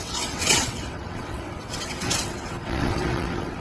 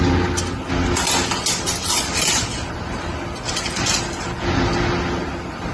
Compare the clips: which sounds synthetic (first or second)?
first